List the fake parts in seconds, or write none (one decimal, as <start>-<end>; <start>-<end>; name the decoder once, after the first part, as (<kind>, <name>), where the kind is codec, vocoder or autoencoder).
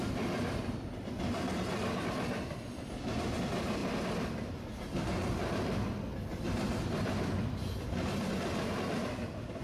6.3-7.1 (vocoder, BigVGAN v2)